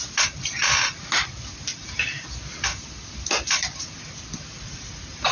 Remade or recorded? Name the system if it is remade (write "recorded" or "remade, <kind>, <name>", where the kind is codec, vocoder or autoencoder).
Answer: recorded